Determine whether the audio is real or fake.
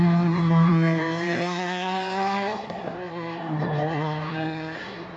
fake